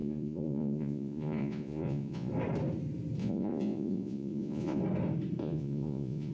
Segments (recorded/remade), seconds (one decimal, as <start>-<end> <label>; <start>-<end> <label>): 0.0-2.3 remade; 2.3-3.2 recorded; 3.2-4.8 remade; 4.8-5.4 recorded; 5.4-6.3 remade